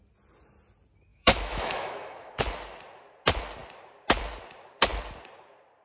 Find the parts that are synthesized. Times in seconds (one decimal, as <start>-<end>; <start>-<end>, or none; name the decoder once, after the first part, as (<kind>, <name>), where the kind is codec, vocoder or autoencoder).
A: 1.1-2.4 (autoencoder, DAC-VAE)